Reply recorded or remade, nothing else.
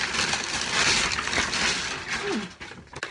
recorded